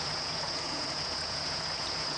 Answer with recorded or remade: remade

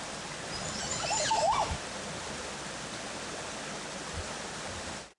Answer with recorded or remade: recorded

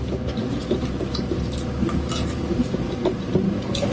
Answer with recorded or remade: recorded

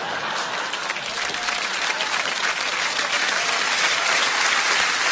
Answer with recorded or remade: recorded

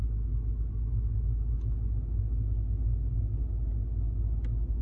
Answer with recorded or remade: recorded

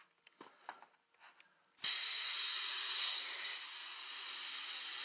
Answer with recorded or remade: recorded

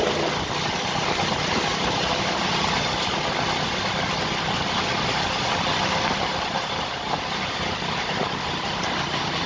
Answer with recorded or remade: recorded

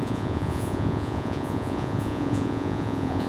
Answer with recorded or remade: remade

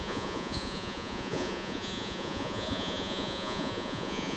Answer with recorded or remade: remade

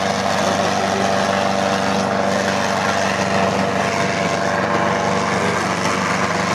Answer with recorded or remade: recorded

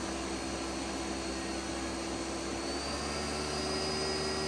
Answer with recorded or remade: recorded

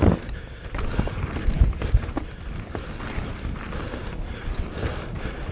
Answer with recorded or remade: recorded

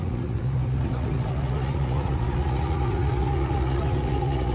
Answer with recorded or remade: remade